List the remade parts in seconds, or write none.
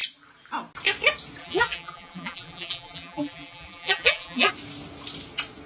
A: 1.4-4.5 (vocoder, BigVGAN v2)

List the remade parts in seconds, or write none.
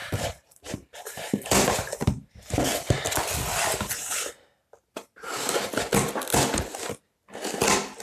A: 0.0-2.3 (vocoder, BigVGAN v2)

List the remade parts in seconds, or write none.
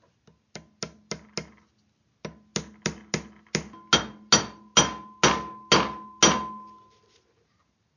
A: none